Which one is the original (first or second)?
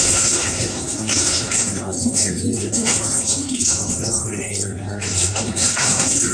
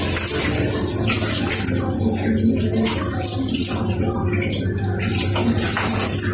second